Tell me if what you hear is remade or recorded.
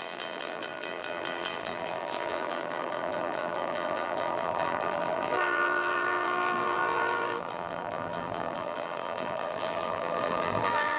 remade